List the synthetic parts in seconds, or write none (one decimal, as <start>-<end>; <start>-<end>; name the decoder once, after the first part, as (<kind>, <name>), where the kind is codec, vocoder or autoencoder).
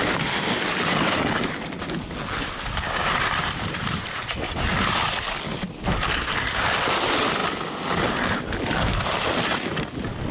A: none